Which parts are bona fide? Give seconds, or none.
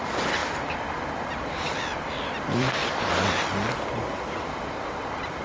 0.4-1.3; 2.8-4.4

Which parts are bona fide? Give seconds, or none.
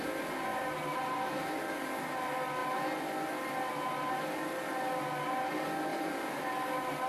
0.0-0.5; 1.5-5.9; 6.4-7.1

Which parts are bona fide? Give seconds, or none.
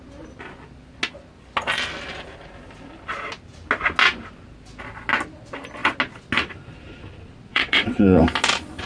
0.0-7.5; 8.2-8.9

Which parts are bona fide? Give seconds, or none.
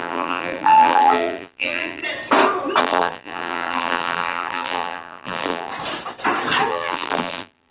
2.0-2.8; 5.7-6.7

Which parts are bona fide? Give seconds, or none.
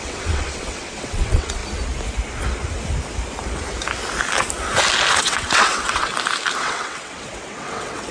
1.6-5.2; 6.1-6.6